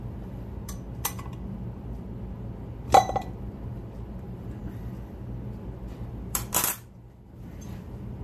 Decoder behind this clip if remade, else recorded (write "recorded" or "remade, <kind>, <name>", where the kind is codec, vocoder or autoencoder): remade, vocoder, BigVGAN v2